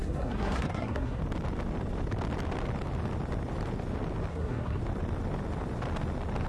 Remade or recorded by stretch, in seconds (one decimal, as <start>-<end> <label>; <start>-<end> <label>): 0.0-1.2 remade; 1.2-4.3 recorded; 4.3-4.8 remade; 4.8-6.5 recorded